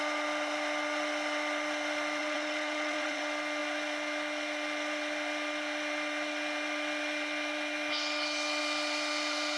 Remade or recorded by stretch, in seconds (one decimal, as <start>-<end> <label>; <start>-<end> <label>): 0.0-2.2 recorded; 2.2-3.2 remade; 3.2-9.6 recorded